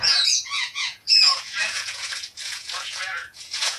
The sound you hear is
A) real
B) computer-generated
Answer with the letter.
B